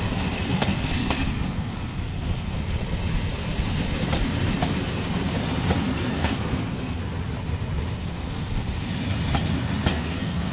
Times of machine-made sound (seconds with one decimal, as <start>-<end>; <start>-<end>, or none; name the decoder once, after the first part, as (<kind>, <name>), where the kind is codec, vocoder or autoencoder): 0.4-2.6 (codec, SNAC); 6.2-7.0; 8.0-8.9; 9.9-10.5